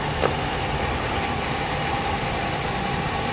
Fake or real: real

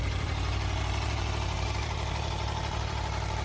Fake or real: fake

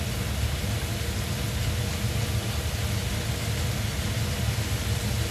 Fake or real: real